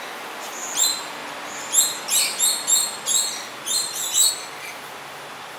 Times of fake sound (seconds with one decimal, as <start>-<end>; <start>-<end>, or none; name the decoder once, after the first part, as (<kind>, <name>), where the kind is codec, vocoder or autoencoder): none